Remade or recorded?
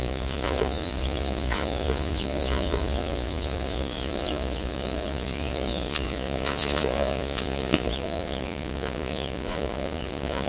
remade